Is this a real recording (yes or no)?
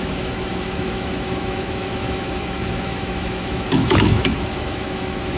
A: no